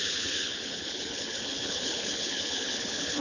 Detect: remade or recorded remade